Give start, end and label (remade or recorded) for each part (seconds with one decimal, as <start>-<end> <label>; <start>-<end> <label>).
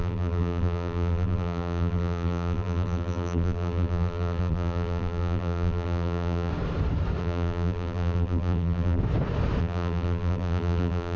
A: 0.0-6.5 remade; 6.5-7.2 recorded; 7.2-9.0 remade; 9.0-9.6 recorded; 9.6-11.2 remade